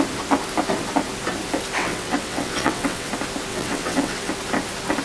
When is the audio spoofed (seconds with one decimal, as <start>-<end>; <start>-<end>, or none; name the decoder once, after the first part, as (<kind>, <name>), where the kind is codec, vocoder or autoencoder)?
1.8-3.1 (vocoder, WaveNeXt); 3.5-4.3